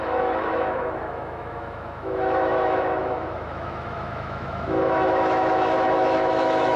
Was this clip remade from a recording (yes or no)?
yes